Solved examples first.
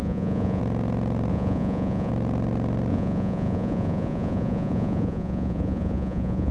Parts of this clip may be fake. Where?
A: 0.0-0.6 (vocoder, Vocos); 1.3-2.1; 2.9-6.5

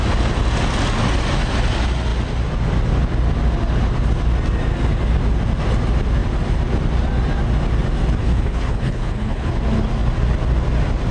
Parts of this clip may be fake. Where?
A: 8.2-9.5 (codec, HILCodec)